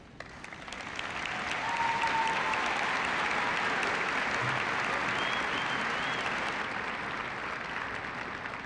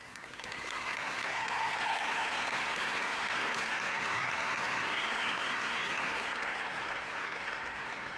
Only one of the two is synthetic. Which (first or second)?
second